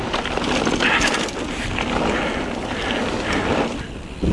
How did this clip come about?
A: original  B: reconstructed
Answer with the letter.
A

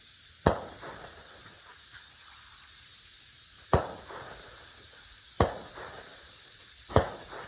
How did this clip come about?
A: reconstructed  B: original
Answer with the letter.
A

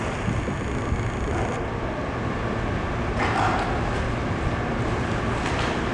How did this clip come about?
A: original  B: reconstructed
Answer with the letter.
A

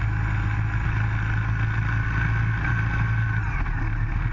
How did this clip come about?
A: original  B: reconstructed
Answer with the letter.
A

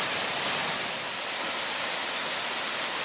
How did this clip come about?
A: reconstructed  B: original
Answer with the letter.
B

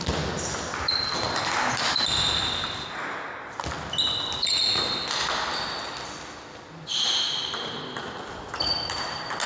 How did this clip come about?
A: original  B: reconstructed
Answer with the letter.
A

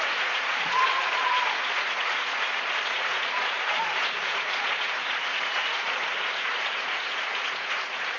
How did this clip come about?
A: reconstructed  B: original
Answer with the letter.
A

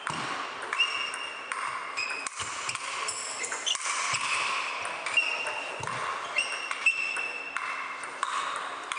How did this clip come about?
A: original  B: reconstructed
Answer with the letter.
A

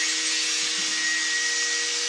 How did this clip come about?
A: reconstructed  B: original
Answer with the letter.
B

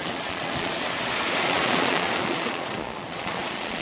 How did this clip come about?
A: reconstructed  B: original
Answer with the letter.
A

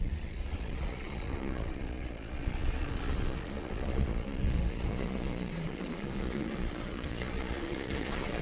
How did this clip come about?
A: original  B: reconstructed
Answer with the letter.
B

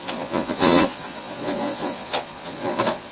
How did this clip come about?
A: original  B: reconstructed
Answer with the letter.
B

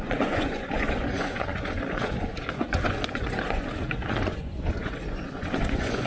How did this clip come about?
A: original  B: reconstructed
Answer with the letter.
B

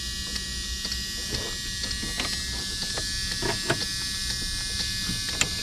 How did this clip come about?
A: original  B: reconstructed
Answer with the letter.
A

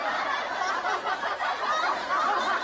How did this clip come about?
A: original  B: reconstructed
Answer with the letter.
A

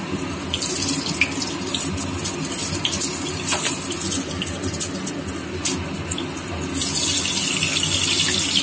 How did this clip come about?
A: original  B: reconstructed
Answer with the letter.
A